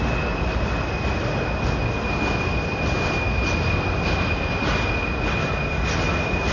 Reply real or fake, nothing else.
real